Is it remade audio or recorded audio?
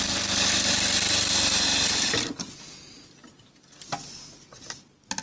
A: recorded